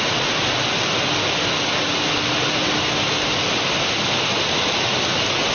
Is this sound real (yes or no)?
yes